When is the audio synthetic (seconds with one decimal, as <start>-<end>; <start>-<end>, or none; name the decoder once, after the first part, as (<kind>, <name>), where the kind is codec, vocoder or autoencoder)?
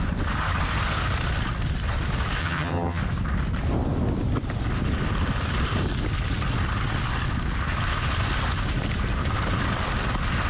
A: 2.4-3.0 (vocoder, HiFi-GAN)